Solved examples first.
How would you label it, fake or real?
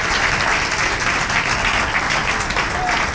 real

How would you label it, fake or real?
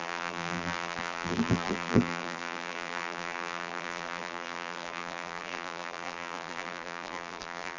fake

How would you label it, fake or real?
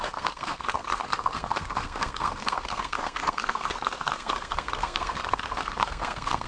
fake